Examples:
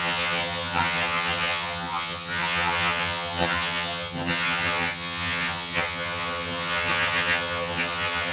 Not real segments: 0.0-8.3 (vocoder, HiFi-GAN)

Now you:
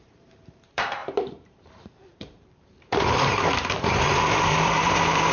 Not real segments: 0.0-5.3 (vocoder, BigVGAN v2)